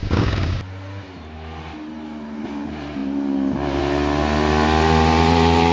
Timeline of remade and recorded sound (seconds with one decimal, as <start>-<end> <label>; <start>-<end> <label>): 0.0-0.6 remade; 0.6-5.7 recorded